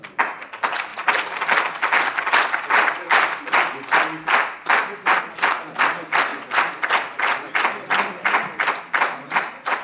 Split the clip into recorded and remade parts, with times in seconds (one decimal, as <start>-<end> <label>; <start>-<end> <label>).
0.0-9.8 recorded